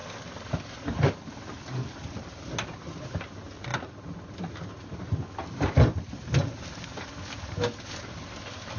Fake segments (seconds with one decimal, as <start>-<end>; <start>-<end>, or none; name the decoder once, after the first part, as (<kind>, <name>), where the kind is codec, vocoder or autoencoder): none